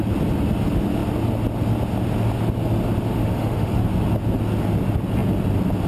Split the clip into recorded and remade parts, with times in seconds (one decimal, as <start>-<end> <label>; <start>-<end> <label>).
0.0-3.1 recorded; 3.1-3.7 remade; 3.7-5.9 recorded